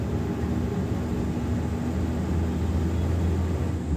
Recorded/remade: recorded